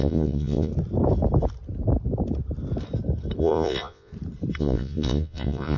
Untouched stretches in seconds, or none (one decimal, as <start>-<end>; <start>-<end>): 0.7-3.4; 4.1-4.6